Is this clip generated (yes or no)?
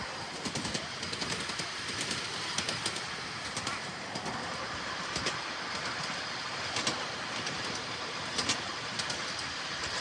no